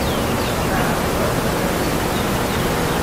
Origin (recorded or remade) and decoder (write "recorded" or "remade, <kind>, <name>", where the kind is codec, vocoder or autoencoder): recorded